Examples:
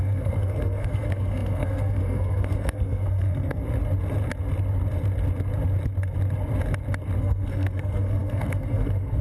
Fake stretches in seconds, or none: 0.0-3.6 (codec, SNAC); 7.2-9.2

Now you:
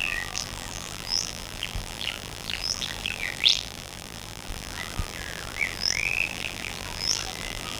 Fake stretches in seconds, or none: 0.0-7.8 (vocoder, BigVGAN v2)

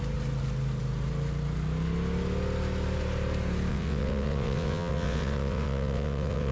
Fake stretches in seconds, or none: 3.7-6.5 (vocoder, WaveNeXt)

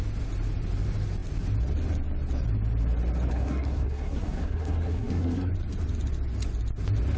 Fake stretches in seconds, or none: 3.3-5.5 (codec, SNAC)

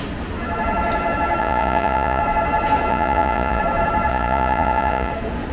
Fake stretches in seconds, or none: 1.4-2.2 (vocoder, Vocos); 2.9-3.6; 4.1-5.1